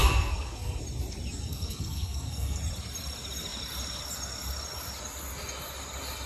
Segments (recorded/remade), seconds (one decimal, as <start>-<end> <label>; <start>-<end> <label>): 0.0-0.8 remade; 0.8-1.4 recorded; 1.4-2.6 remade; 2.6-6.3 recorded